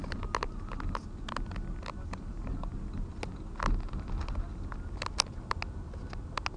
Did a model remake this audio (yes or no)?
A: no